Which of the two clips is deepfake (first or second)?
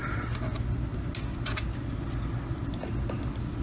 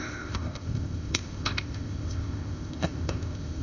second